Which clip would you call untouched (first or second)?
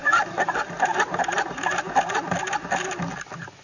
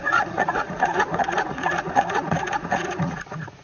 first